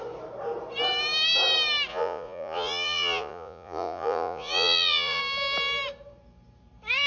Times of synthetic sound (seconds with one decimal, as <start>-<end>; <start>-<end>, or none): 1.9-5.2